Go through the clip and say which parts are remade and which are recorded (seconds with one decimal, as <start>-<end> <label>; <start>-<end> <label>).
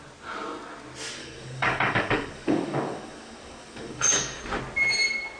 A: 0.0-1.2 recorded; 1.2-4.4 remade; 4.4-5.4 recorded